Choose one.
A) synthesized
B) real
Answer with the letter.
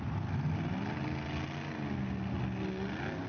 B